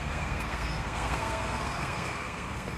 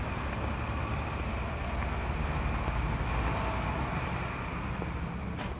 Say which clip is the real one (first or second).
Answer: second